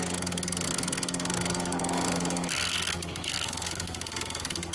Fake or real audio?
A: fake